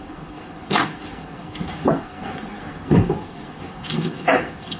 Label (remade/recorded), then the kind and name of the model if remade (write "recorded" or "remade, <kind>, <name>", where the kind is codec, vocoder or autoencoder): remade, codec, SNAC